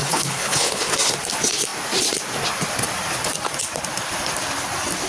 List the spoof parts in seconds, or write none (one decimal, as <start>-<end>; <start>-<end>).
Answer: 0.0-0.9